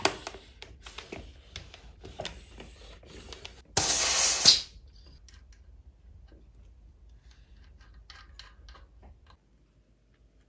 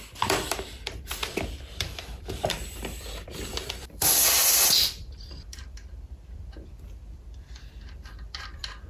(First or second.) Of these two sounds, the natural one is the first